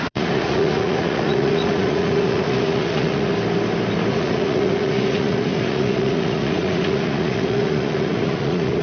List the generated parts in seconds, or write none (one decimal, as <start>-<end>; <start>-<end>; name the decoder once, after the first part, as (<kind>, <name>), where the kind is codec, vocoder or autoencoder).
0.0-3.3 (vocoder, Vocos); 4.1-8.8